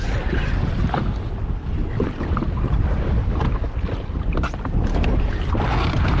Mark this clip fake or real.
real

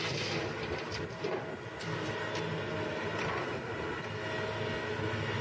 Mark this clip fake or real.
real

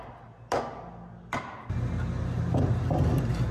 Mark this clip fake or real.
real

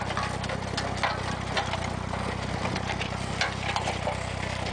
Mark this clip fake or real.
real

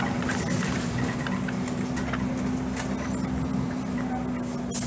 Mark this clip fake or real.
real